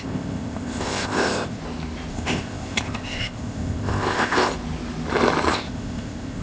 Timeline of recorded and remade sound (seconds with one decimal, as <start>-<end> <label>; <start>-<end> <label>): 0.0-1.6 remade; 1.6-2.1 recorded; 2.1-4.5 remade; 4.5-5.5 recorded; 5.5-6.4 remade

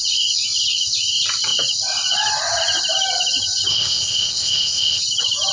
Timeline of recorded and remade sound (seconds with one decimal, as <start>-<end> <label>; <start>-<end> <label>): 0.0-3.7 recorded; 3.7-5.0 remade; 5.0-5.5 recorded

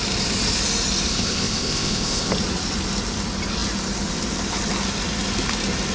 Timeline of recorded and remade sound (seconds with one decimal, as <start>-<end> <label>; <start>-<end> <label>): 0.0-1.1 recorded; 1.1-2.3 remade; 2.3-5.9 recorded

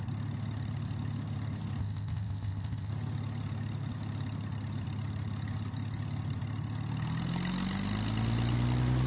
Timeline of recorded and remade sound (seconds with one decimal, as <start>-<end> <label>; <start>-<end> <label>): 0.0-1.8 recorded; 1.8-2.9 remade; 2.9-9.1 recorded

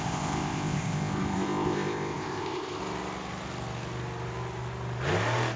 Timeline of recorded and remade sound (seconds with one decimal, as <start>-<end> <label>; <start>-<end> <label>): 0.0-2.8 remade; 2.8-5.6 recorded

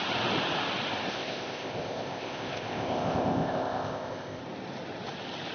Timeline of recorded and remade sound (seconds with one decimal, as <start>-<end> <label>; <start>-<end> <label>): 0.0-1.1 recorded; 1.1-4.4 remade; 4.4-5.5 recorded

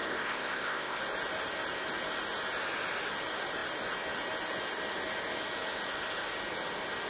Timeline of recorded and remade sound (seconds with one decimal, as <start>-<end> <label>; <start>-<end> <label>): 0.0-1.0 remade; 1.0-7.1 recorded